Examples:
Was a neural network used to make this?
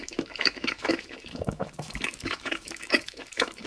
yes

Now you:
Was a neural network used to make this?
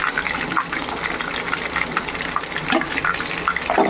no